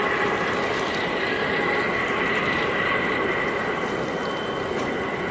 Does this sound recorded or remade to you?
recorded